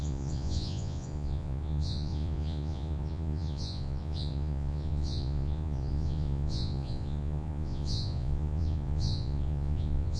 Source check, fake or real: fake